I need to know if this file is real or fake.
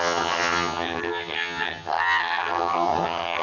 fake